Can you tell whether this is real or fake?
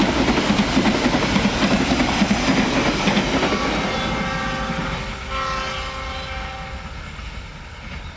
real